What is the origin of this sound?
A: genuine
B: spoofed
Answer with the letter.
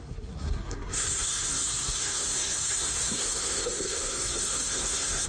B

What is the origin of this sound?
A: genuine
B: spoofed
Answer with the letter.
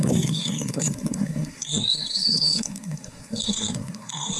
B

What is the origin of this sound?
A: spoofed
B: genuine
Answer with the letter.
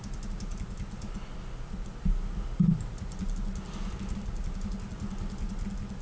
B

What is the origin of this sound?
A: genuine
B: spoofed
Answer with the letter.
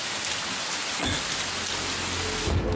A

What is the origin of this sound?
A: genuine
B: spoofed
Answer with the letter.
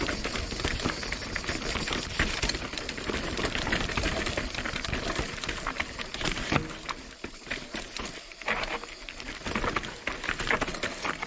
A